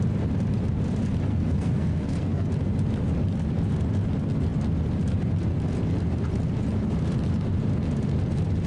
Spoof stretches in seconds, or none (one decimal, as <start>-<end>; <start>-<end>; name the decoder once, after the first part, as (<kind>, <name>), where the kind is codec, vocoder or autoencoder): 1.3-2.5 (codec, SNAC)